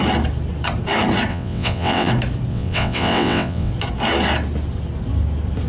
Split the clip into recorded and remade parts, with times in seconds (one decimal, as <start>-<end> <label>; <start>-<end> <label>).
0.0-1.3 recorded; 1.3-2.1 remade; 2.1-2.5 recorded; 2.5-3.7 remade; 3.7-5.7 recorded